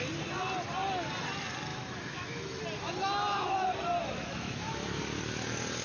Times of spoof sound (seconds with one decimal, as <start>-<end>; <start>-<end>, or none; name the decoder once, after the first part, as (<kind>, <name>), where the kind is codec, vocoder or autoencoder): 1.7-2.6 (autoencoder, DAC-VAE); 4.0-5.0